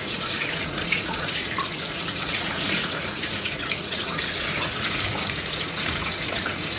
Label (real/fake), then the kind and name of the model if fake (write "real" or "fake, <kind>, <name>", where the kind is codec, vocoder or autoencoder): fake, vocoder, Vocos